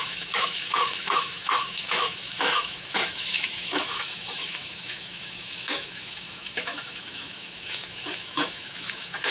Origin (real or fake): fake